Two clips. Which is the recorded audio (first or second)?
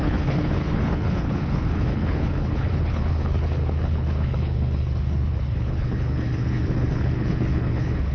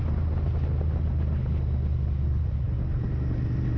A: second